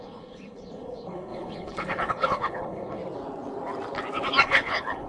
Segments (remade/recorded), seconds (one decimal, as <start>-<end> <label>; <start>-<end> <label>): 0.0-3.0 remade; 3.0-4.4 recorded; 4.4-5.1 remade